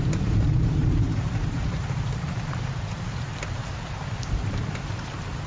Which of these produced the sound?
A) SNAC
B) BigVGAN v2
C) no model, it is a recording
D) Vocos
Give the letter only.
B